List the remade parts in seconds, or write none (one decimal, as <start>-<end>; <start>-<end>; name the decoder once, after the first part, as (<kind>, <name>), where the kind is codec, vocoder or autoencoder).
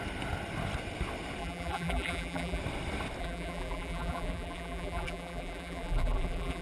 1.4-2.6 (vocoder, BigVGAN v2); 3.2-6.6